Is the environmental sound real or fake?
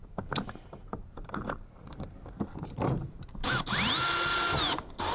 fake